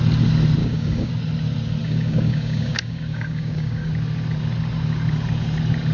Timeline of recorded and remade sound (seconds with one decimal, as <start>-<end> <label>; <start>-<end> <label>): 0.0-0.6 recorded; 0.6-1.1 remade; 1.1-1.8 recorded; 1.8-3.9 remade; 3.9-5.9 recorded